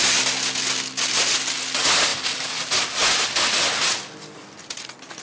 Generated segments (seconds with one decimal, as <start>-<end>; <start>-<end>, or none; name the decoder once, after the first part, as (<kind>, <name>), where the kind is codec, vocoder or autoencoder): none